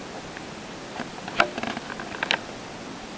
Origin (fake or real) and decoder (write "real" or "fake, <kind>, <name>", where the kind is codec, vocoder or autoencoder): real